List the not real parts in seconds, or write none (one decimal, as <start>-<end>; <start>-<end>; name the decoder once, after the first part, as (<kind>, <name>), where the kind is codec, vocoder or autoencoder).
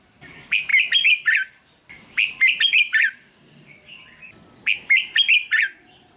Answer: none